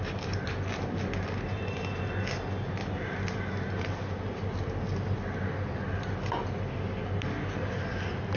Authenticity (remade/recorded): recorded